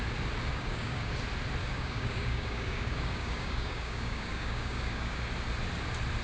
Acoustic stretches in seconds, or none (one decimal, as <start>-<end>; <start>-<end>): 0.0-0.5; 1.1-1.6; 5.3-6.2